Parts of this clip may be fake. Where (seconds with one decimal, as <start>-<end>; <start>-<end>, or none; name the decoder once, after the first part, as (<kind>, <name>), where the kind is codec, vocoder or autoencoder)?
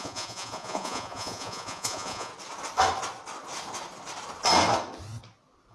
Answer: 0.0-2.3 (vocoder, Vocos)